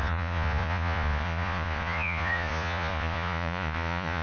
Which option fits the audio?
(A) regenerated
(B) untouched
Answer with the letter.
A